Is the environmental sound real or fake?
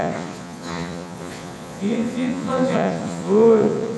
fake